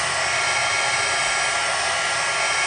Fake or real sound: real